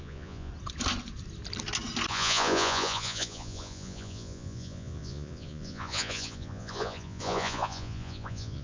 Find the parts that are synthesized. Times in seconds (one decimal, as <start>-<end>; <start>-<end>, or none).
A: 0.0-0.5; 2.1-8.6